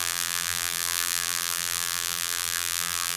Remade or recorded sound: remade